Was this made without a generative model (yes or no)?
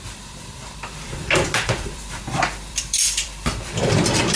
no